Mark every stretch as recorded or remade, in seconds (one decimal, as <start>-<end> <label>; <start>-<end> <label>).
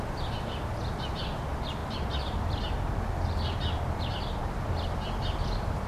0.0-1.8 recorded; 1.8-2.6 remade; 2.6-5.9 recorded